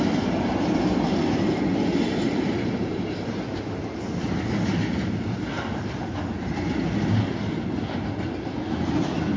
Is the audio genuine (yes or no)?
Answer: yes